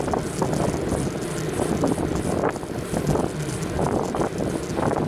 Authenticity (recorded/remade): recorded